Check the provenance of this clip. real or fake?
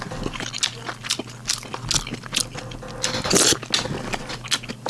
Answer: real